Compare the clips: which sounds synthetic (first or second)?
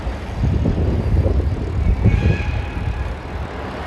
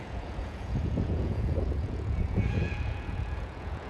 second